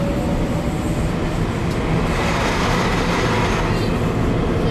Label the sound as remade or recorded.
recorded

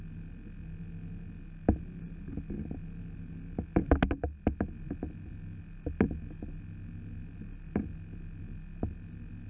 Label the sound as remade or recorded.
recorded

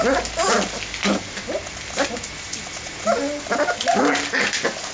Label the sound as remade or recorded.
recorded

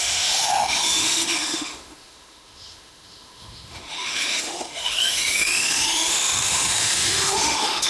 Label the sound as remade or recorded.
remade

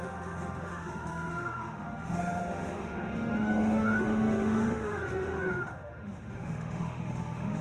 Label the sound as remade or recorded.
remade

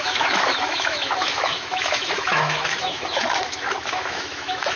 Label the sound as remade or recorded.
remade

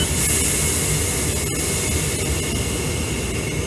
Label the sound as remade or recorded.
recorded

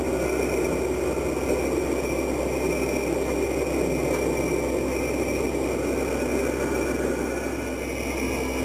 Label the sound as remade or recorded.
recorded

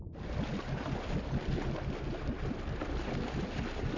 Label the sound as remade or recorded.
recorded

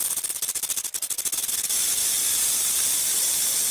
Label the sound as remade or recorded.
recorded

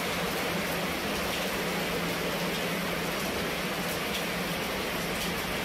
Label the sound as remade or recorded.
recorded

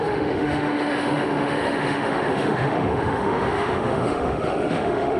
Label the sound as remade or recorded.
remade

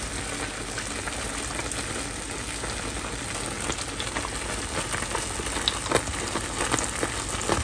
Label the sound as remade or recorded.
recorded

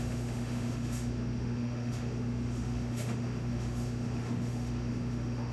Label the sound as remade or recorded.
remade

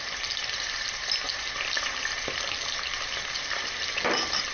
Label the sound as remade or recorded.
recorded